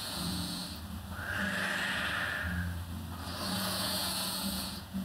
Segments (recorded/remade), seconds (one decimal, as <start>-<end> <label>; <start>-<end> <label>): 0.0-0.6 remade; 0.6-3.6 recorded; 3.6-5.0 remade